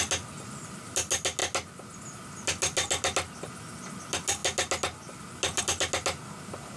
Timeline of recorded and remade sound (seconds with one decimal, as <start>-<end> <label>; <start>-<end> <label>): 0.0-6.8 recorded